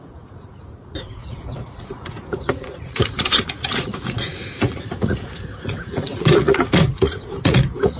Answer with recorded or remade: remade